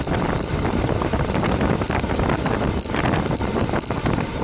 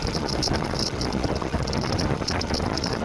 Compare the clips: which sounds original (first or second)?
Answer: first